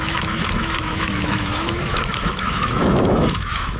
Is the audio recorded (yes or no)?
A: no